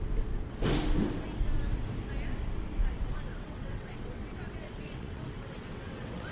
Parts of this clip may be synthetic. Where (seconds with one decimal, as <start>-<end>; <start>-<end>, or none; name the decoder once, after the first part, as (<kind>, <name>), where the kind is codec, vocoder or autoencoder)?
3.3-6.3 (vocoder, WaveNeXt)